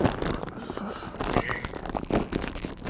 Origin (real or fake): real